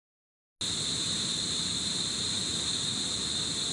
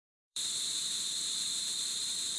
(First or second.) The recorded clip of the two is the first